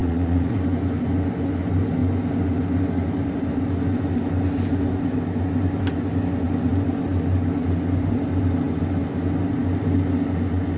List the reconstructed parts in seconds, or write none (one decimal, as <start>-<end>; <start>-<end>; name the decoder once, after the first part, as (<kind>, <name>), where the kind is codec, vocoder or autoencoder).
0.0-0.6 (vocoder, Vocos)